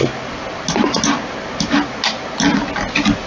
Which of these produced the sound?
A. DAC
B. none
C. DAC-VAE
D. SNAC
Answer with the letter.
B